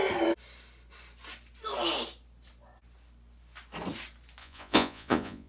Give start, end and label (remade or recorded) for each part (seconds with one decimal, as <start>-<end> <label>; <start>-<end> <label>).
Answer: 0.0-4.4 recorded; 4.4-5.5 remade